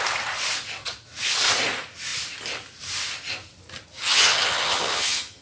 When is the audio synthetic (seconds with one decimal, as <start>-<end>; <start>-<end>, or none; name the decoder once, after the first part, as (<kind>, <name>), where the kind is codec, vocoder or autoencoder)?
4.1-5.4 (vocoder, HiFi-GAN)